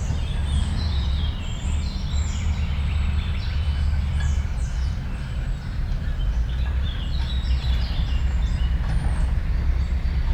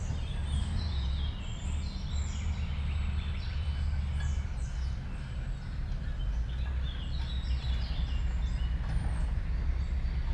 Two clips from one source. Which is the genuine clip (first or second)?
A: second